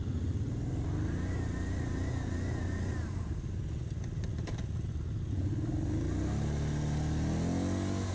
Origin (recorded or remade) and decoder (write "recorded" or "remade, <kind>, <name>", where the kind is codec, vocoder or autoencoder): recorded